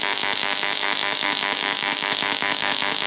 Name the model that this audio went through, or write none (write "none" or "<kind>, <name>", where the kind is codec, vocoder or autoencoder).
codec, DAC